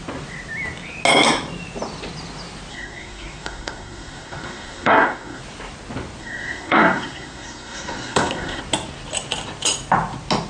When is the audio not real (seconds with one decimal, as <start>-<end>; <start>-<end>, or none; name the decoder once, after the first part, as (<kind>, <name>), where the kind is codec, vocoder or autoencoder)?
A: 2.7-5.4 (codec, SNAC); 6.2-8.6